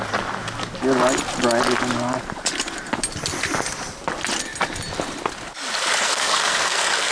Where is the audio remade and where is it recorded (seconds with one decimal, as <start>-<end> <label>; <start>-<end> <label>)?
0.0-6.0 recorded; 6.0-7.1 remade

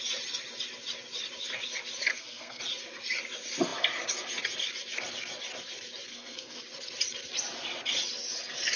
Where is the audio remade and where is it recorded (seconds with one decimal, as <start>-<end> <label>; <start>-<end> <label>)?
0.0-2.1 recorded; 2.1-2.6 remade; 2.6-6.1 recorded; 6.1-6.6 remade; 6.6-8.8 recorded

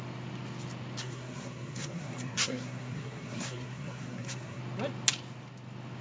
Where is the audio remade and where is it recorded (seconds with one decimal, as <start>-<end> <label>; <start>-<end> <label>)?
0.0-1.0 recorded; 1.0-4.6 remade; 4.6-6.0 recorded

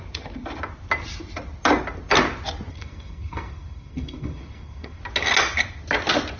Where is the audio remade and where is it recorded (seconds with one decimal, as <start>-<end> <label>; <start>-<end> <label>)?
0.0-2.7 recorded; 2.7-5.0 remade; 5.0-6.4 recorded